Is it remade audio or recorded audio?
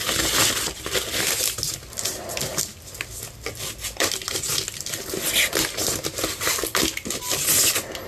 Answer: recorded